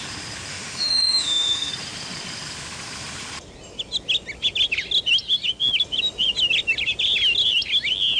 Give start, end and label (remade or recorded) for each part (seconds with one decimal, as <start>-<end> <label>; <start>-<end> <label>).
0.0-0.5 recorded; 0.5-1.7 remade; 1.7-8.2 recorded